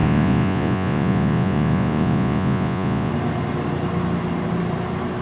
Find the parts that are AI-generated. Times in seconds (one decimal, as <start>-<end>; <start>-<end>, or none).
0.0-3.1